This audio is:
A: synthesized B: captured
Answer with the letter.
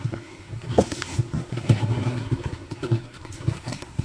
A